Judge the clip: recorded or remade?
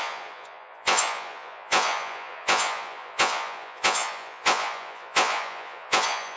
remade